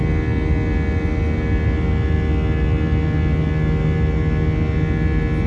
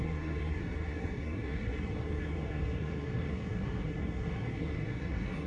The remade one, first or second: second